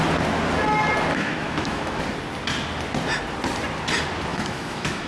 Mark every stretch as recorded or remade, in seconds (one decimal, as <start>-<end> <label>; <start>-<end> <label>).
0.0-1.1 recorded; 1.1-2.0 remade; 2.0-4.3 recorded; 4.3-5.1 remade